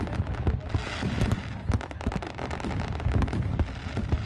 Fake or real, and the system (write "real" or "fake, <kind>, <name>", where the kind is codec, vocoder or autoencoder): real